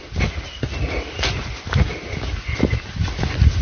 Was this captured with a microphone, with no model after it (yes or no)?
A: yes